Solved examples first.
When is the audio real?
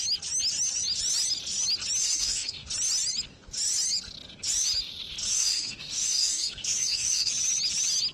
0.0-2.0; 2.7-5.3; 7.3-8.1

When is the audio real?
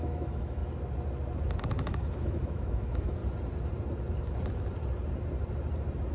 0.6-1.6; 3.2-6.1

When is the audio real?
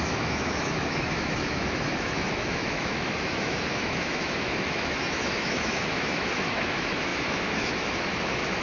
none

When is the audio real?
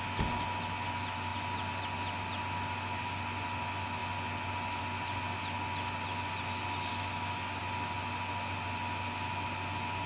0.0-6.9; 7.6-10.1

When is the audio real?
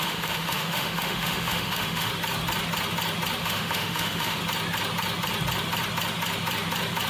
2.1-3.4; 4.4-7.1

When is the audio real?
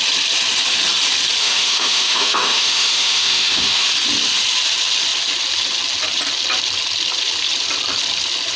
0.0-1.4; 3.9-8.6